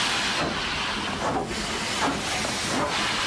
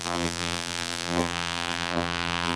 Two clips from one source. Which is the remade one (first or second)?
second